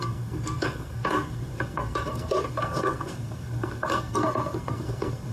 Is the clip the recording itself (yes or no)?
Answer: no